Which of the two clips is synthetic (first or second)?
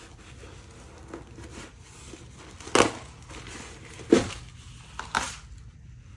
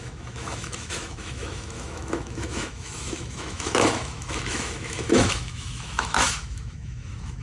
second